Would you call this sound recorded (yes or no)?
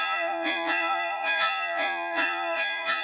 no